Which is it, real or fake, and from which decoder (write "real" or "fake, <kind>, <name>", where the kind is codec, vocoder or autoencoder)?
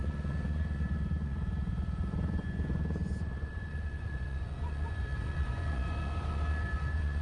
fake, vocoder, Vocos